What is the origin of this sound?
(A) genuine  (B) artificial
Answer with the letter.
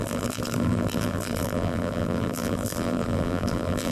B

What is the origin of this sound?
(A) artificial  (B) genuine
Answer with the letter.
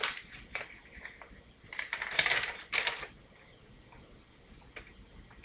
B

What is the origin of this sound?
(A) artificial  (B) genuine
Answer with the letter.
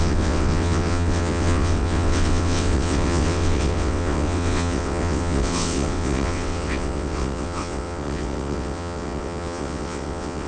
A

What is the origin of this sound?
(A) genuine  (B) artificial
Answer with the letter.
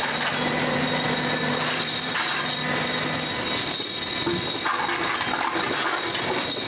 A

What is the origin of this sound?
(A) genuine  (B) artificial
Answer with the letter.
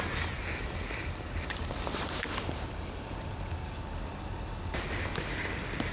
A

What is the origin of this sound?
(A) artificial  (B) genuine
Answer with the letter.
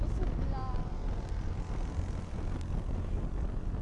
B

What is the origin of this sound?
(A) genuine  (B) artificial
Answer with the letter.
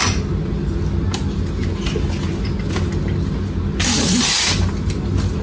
A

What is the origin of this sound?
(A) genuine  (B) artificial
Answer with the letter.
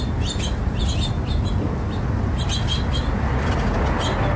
A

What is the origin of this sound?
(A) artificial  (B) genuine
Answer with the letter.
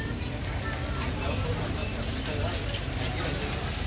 B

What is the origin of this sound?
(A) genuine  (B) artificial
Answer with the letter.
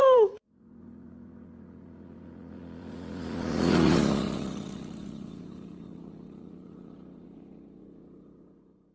B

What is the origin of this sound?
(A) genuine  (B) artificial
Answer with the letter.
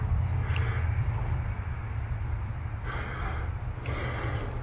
A